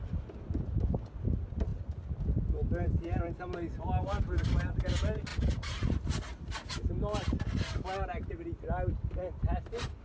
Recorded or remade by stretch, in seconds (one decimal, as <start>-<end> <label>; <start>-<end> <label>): 0.0-10.0 recorded